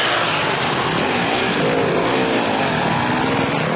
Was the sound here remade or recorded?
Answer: recorded